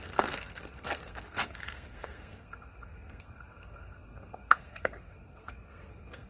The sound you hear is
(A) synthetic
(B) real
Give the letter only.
A